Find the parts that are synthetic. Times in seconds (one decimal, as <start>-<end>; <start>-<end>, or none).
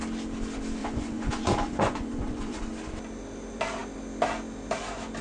0.8-2.6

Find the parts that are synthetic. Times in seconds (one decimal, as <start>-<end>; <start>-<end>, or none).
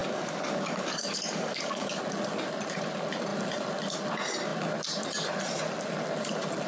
0.0-2.0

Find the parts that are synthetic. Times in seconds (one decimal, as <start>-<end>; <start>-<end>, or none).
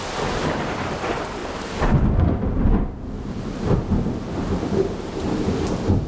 1.4-3.8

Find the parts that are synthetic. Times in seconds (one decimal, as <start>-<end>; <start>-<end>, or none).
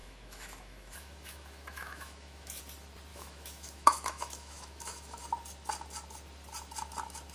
0.0-2.6; 3.1-5.2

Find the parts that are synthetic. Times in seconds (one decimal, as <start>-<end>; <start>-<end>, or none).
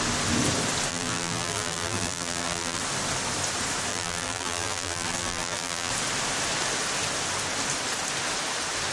0.9-2.8; 3.9-5.9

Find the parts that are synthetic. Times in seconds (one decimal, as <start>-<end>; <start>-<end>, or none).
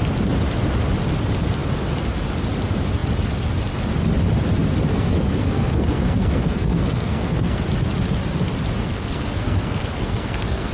4.9-7.6; 8.8-10.7